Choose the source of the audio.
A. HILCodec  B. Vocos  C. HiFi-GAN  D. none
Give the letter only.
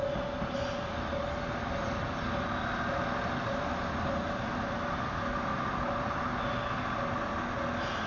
D